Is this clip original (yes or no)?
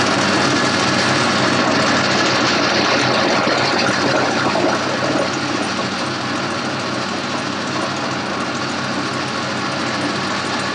yes